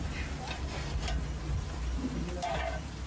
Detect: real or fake real